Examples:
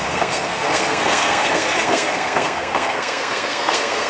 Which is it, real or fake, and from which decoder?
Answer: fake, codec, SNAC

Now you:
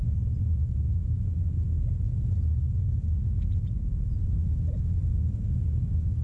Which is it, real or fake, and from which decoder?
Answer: real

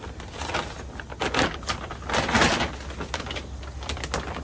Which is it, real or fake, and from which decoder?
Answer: real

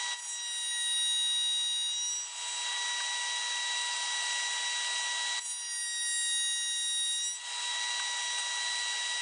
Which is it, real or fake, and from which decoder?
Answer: real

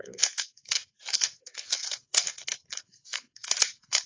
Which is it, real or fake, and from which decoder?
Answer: fake, codec, SNAC